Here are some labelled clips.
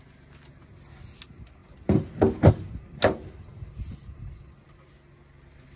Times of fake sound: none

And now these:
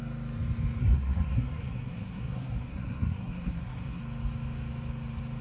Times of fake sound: 0.8-4.0 (codec, SNAC)

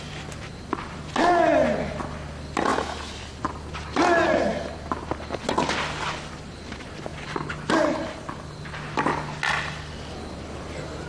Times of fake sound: none

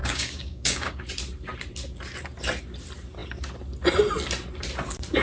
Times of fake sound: 0.0-1.0 (codec, DAC)